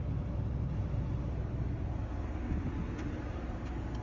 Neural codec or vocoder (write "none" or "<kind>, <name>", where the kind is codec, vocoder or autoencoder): none